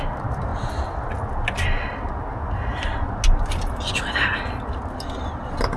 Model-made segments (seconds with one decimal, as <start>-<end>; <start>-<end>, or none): none